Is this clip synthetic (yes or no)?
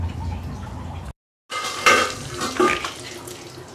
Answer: no